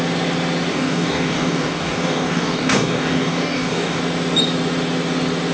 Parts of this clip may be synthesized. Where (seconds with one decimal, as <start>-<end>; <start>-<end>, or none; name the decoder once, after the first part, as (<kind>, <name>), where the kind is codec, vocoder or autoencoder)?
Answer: 0.7-4.0 (codec, DAC)